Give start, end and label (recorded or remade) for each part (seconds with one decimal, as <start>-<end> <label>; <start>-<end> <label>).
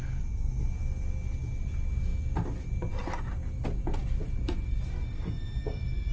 0.0-4.0 recorded; 4.0-6.1 remade